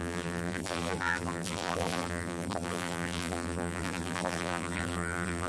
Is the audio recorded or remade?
remade